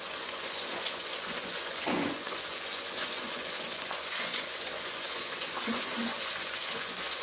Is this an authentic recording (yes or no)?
no